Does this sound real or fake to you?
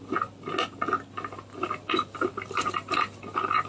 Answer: real